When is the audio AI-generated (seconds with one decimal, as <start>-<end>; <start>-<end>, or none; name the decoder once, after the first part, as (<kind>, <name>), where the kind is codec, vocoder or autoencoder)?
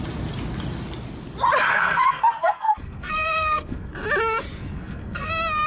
1.7-3.9 (codec, SNAC); 4.6-5.3